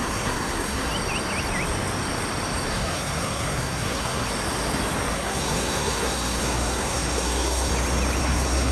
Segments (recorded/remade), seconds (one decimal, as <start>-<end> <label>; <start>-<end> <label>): 0.0-0.9 remade; 0.9-2.7 recorded; 2.7-4.3 remade; 4.3-5.1 recorded; 5.1-7.7 remade; 7.7-8.2 recorded; 8.2-8.7 remade

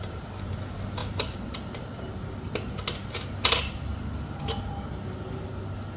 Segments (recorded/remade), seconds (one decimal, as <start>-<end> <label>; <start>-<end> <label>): 0.0-6.0 recorded

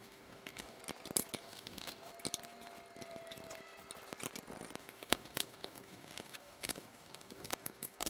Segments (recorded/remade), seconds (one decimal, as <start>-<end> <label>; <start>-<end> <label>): 0.0-0.8 remade; 0.8-1.4 recorded; 1.4-2.1 remade; 2.1-4.8 recorded; 4.8-8.1 remade

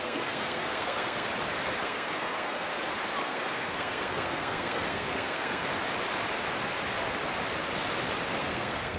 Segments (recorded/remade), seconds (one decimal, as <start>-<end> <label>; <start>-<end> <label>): 0.0-1.3 remade; 1.3-1.8 recorded; 1.8-2.7 remade; 2.7-3.2 recorded; 3.2-5.7 remade; 5.7-8.4 recorded; 8.4-9.0 remade

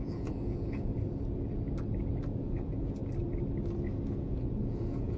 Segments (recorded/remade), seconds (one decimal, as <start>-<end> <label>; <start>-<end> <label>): 0.0-0.9 remade; 0.9-2.4 recorded; 2.4-3.0 remade; 3.0-4.2 recorded; 4.2-5.2 remade

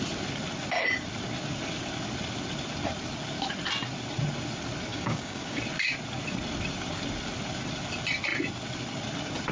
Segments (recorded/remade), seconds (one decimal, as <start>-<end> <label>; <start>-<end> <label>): 0.0-4.9 recorded; 4.9-5.6 remade; 5.6-9.5 recorded

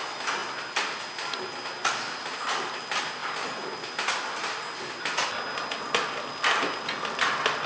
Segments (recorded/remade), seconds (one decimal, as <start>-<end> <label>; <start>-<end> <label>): 0.0-7.7 recorded